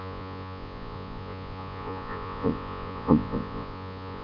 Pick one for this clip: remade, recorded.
remade